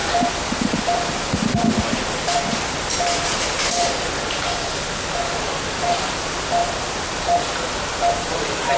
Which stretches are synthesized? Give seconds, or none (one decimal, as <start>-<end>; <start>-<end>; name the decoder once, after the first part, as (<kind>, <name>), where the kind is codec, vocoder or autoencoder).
none